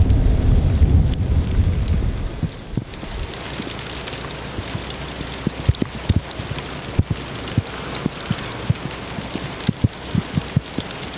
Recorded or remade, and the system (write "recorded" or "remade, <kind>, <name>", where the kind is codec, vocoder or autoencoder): recorded